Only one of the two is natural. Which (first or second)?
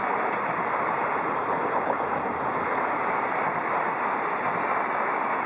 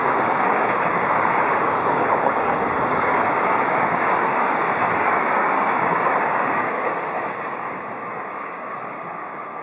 first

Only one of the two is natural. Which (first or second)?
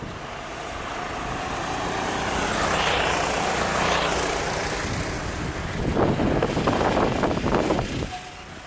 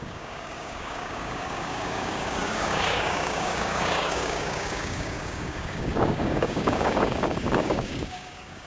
first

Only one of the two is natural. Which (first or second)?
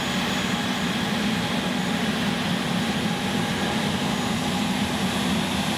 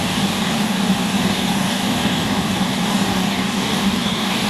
first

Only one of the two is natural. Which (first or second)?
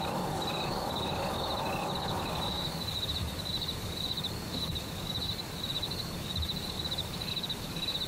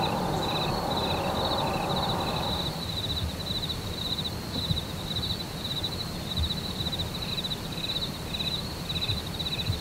second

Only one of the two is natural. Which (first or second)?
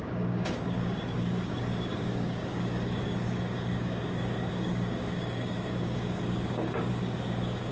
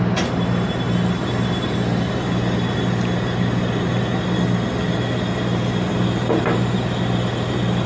second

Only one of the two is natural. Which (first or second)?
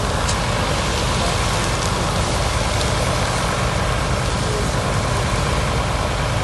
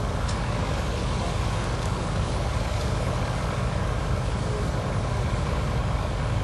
first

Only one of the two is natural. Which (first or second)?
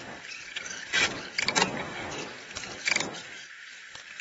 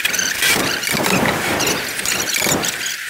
second